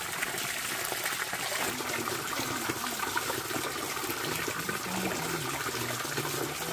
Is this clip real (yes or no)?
yes